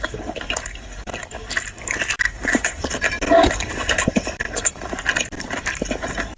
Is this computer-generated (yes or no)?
no